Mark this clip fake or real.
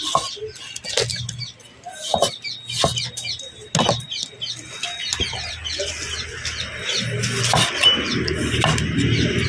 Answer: real